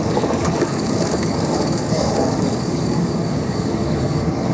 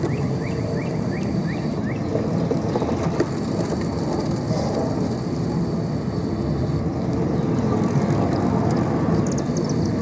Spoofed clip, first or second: first